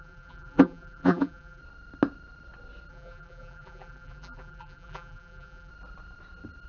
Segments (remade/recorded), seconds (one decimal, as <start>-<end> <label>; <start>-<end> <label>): 0.0-1.6 remade; 1.6-2.9 recorded; 2.9-5.7 remade; 5.7-6.7 recorded